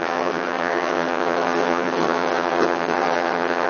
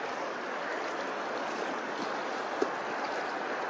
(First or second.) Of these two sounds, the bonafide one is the second